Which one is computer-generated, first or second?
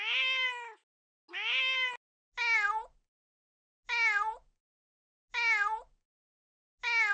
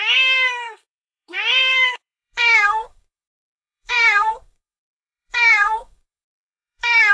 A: second